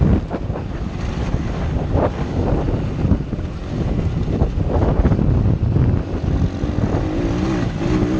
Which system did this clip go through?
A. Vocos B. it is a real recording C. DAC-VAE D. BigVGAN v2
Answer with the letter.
B